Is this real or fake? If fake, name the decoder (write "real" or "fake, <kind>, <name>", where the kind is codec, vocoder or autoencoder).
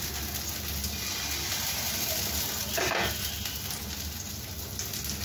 real